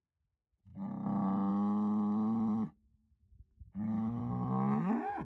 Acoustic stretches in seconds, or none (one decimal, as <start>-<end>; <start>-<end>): 0.0-2.8; 4.2-5.2